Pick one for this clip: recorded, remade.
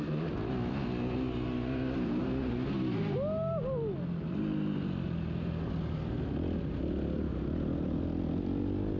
recorded